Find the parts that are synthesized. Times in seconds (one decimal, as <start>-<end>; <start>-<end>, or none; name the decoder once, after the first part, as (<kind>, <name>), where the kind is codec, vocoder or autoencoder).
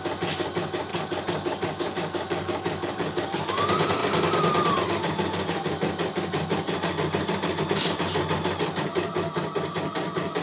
0.9-3.5 (codec, DAC)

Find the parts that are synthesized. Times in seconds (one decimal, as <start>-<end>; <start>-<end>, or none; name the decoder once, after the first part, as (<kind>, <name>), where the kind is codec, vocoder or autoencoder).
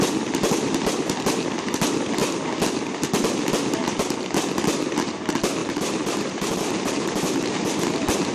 5.6-7.8 (vocoder, BigVGAN v2)